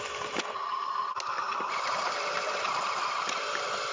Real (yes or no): yes